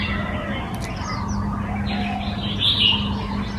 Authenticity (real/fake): real